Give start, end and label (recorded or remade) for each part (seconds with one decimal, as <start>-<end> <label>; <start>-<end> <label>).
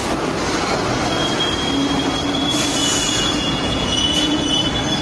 0.0-2.8 recorded; 2.8-4.6 remade; 4.6-5.0 recorded